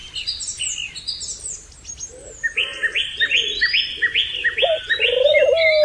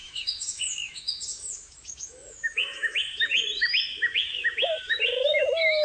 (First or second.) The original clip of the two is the first